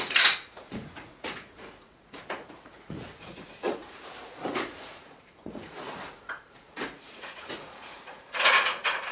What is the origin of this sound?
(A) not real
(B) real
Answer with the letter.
A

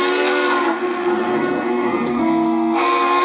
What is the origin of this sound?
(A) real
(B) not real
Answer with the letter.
B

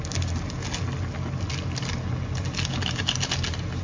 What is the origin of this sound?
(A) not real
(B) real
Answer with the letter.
B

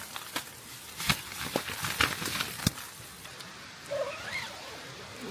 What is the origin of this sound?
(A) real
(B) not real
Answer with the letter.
A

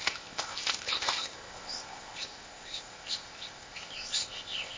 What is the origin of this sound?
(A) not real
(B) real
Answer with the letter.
A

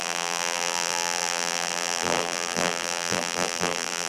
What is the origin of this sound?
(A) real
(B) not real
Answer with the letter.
B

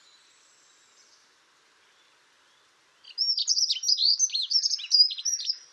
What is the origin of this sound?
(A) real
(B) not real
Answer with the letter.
A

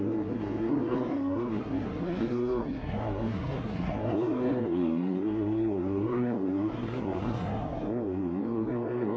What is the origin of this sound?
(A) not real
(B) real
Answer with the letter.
A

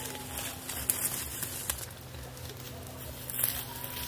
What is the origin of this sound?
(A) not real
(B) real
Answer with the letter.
B